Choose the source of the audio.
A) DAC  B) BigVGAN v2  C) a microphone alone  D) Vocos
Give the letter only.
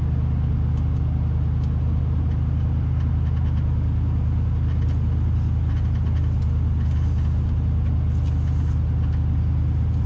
C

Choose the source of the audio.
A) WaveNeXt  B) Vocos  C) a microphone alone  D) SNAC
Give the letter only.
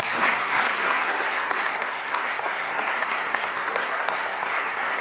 D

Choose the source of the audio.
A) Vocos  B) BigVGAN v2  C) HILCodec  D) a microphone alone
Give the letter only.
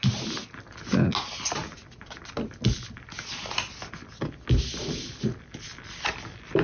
D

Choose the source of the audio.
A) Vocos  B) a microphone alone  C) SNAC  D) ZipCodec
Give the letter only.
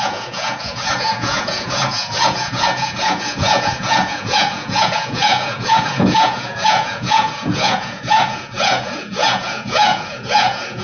A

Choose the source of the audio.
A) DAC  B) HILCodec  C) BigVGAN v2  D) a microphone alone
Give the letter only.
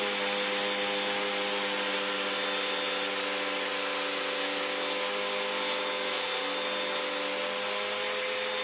D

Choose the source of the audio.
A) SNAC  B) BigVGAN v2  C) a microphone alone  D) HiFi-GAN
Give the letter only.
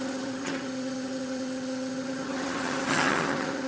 D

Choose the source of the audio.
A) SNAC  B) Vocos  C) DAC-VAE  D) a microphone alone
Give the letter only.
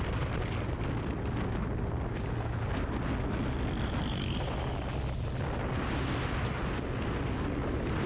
D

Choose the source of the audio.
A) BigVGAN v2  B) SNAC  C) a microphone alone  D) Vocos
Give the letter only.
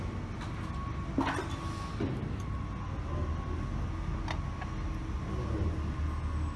C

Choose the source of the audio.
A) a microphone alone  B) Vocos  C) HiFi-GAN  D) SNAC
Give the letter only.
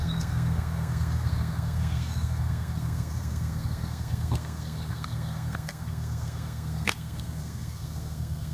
D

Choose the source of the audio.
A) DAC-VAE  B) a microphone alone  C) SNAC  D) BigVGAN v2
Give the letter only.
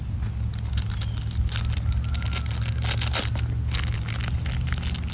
B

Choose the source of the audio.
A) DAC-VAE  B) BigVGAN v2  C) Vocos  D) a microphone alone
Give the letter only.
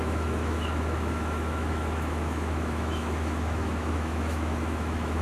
A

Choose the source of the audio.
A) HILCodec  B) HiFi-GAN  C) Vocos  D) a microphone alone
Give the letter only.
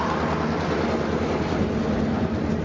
D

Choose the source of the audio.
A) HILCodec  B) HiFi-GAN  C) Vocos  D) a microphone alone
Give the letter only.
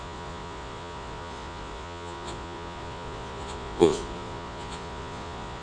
C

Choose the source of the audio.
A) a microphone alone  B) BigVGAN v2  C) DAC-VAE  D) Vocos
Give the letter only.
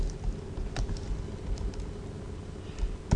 A